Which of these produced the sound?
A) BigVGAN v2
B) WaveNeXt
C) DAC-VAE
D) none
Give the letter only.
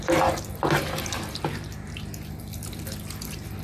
D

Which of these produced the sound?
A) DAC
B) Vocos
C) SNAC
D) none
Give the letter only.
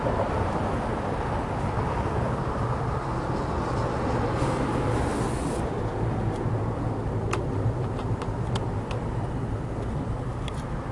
D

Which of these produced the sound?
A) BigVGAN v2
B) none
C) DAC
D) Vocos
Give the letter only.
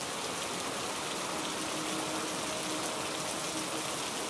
B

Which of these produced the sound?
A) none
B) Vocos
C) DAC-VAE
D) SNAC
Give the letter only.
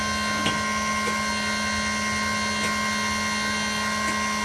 A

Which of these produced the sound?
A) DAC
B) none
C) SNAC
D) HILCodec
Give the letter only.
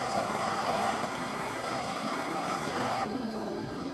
C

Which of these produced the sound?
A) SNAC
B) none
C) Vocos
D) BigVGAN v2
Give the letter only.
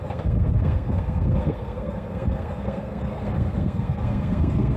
A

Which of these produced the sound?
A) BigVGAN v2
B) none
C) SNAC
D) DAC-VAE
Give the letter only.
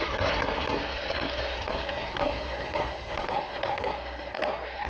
C